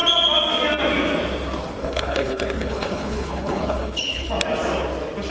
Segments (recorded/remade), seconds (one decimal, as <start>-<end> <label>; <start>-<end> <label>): 0.0-1.8 recorded; 1.8-4.3 remade; 4.3-5.3 recorded